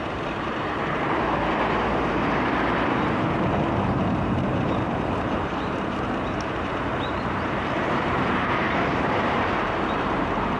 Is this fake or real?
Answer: fake